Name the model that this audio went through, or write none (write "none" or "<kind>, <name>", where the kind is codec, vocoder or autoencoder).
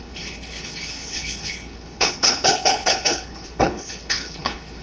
codec, HILCodec